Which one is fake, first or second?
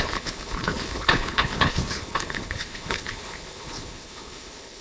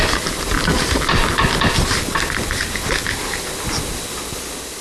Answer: first